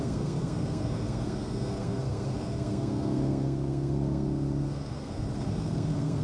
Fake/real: fake